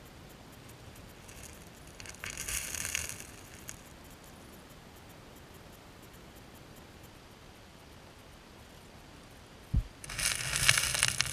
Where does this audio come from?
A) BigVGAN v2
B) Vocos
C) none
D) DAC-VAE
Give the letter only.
C